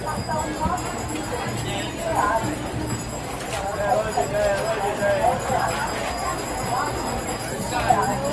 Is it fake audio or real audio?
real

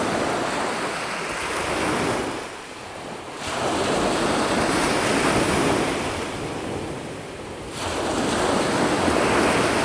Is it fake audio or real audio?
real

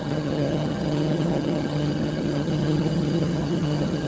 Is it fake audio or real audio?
fake